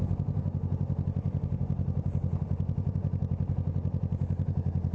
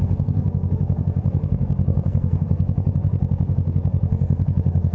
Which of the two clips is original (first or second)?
first